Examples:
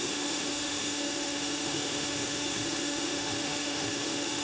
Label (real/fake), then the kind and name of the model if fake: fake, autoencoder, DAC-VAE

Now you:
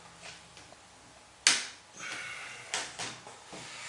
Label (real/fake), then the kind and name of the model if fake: real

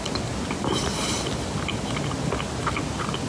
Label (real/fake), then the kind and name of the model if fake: real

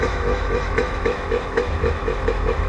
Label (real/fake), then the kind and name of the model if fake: fake, autoencoder, DAC-VAE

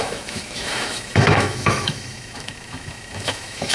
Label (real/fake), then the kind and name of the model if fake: fake, autoencoder, DAC-VAE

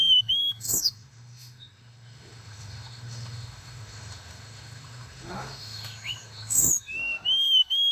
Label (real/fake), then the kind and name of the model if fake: fake, autoencoder, DAC-VAE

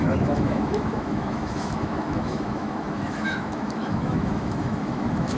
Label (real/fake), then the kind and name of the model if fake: fake, autoencoder, DAC-VAE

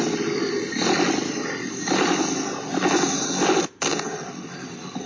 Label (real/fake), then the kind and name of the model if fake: real